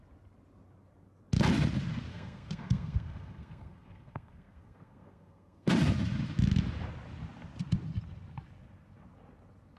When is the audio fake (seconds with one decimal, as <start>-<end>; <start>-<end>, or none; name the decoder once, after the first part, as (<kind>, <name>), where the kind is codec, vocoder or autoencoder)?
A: 2.1-5.7 (codec, SNAC)